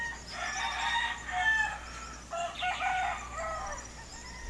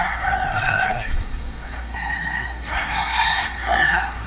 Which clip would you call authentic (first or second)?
first